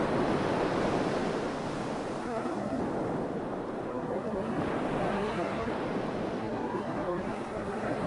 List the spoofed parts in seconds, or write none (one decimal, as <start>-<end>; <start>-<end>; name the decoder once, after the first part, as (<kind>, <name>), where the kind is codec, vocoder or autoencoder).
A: 2.2-2.8 (codec, SNAC); 3.9-4.6; 5.0-5.7; 6.4-8.1

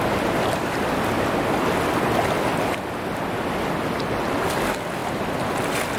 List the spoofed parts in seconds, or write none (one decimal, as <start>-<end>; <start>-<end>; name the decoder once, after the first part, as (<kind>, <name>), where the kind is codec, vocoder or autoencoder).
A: none